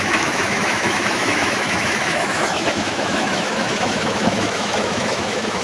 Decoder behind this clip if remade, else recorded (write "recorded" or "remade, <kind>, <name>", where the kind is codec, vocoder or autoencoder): remade, autoencoder, DAC-VAE